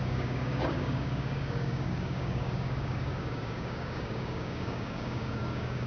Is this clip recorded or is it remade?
remade